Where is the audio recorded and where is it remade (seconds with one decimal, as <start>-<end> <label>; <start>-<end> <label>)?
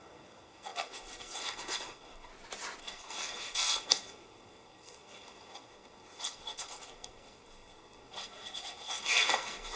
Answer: 0.0-2.3 remade; 2.3-2.8 recorded; 2.8-9.8 remade